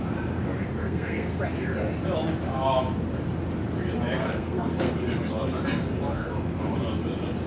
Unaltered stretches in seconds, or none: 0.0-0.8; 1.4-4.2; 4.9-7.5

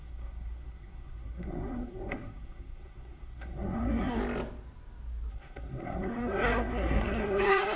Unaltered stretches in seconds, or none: 4.2-5.3

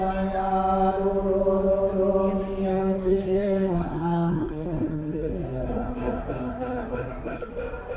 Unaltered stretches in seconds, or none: 0.0-2.7; 7.5-8.0

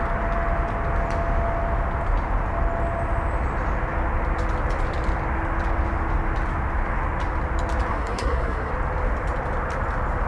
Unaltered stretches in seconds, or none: 0.0-7.9; 8.7-10.3

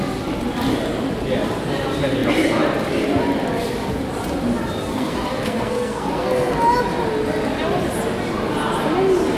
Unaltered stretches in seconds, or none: 0.0-4.9; 6.5-9.4

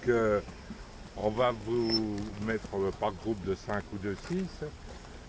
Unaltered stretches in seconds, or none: 0.0-5.3

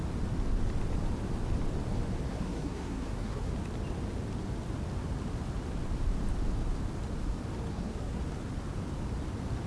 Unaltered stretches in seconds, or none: 0.0-2.3; 3.5-7.7; 8.2-9.7

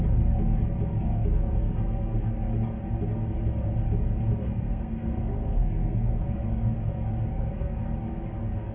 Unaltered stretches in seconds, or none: 0.0-1.6; 2.2-4.4; 6.2-7.3; 7.8-8.7